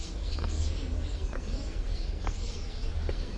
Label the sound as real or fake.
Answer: fake